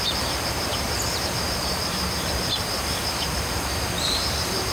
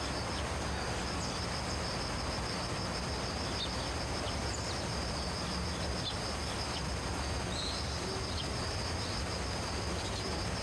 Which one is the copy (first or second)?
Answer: first